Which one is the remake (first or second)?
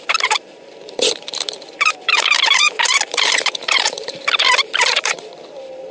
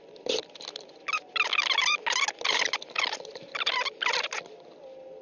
first